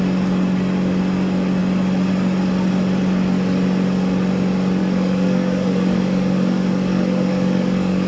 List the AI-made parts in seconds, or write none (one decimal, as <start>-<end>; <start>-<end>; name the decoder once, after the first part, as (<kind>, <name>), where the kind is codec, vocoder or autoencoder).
4.8-8.1 (codec, DAC)